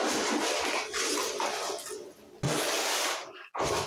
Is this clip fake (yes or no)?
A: no